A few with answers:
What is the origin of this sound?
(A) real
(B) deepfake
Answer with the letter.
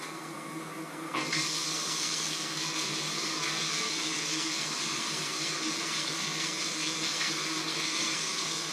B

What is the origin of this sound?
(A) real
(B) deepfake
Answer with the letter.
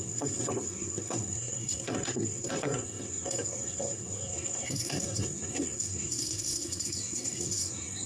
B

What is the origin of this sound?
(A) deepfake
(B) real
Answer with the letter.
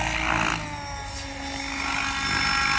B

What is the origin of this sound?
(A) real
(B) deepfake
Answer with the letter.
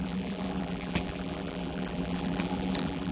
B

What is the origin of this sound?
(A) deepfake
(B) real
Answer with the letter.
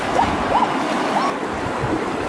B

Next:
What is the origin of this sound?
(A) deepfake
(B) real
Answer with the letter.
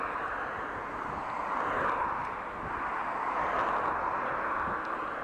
B